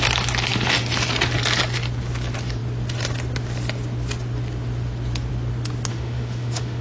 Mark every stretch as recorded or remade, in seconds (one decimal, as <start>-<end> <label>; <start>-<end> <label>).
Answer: 0.0-5.9 recorded; 5.9-6.8 remade